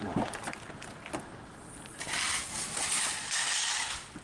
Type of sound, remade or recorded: recorded